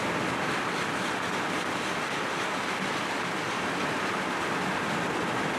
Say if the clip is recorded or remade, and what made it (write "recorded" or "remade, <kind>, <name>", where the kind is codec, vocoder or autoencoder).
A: recorded